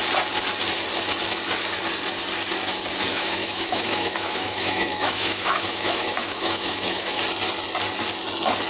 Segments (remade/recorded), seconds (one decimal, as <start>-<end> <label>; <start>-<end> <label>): 0.0-3.1 recorded; 3.1-7.2 remade; 7.2-8.7 recorded